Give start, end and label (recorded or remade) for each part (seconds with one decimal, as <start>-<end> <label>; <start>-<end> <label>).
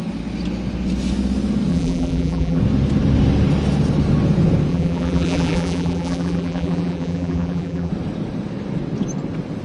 0.0-1.7 recorded; 1.7-2.6 remade; 2.6-4.7 recorded; 4.7-7.9 remade; 7.9-9.6 recorded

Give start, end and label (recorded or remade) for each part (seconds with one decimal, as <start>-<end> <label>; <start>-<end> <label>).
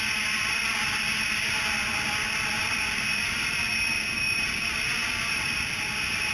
0.0-6.3 remade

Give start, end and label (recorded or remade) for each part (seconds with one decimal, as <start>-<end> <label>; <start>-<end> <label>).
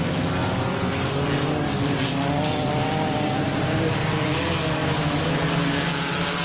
0.0-6.4 recorded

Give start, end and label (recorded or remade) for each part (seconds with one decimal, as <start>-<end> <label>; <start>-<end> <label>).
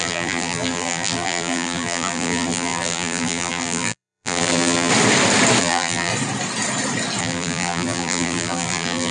0.0-4.9 remade; 4.9-5.6 recorded; 5.6-6.1 remade; 6.1-7.2 recorded; 7.2-9.1 remade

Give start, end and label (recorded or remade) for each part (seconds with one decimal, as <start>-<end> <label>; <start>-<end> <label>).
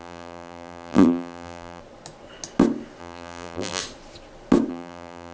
0.0-1.8 remade; 1.8-3.0 recorded; 3.0-3.8 remade; 3.8-4.7 recorded; 4.7-5.3 remade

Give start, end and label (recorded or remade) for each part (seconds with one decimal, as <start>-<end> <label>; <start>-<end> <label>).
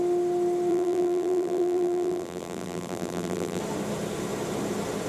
0.0-0.7 recorded; 0.7-3.6 remade; 3.6-5.1 recorded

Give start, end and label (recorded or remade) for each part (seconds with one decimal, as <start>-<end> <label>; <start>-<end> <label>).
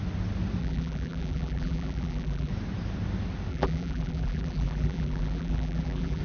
0.0-0.6 recorded; 0.6-2.5 remade; 2.5-3.5 recorded; 3.5-6.2 remade